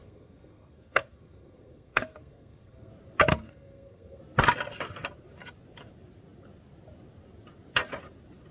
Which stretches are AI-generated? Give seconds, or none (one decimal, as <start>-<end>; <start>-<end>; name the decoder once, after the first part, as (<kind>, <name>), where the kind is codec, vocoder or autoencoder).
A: 0.0-2.9 (codec, SNAC); 3.3-4.2